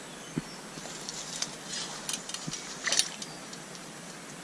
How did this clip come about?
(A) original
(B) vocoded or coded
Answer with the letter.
A